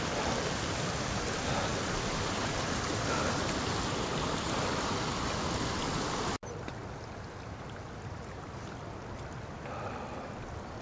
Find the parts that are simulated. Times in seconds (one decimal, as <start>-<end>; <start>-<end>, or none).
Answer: none